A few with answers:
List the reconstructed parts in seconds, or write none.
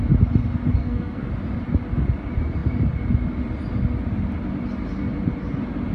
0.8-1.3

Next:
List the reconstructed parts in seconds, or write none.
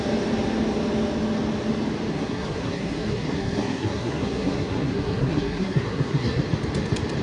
2.1-6.4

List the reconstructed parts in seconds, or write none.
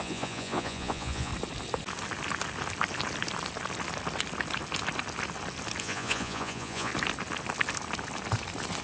0.0-1.3; 5.8-6.9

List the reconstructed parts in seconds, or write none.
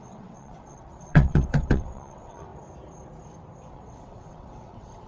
0.0-2.5; 3.7-5.1